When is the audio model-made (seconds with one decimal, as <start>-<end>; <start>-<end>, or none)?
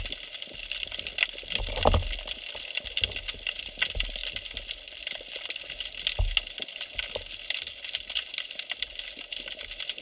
none